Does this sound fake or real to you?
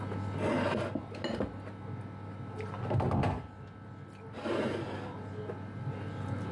real